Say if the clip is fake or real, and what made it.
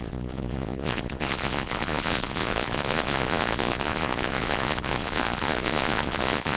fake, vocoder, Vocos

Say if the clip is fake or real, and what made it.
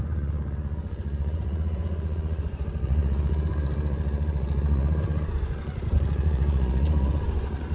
fake, vocoder, Vocos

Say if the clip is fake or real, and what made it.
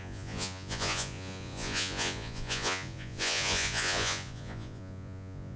fake, vocoder, Vocos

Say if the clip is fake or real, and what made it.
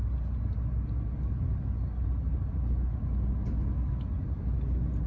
real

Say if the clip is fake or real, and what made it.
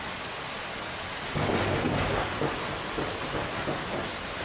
real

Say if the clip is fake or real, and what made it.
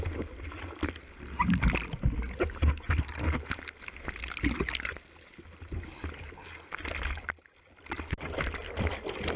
real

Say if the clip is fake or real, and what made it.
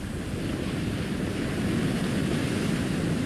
real